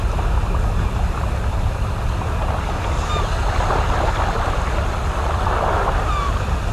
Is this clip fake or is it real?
real